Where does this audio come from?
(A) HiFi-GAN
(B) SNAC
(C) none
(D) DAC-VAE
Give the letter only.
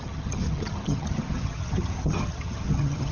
A